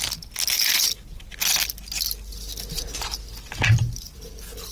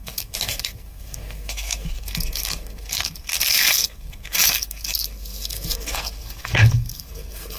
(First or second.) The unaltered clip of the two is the first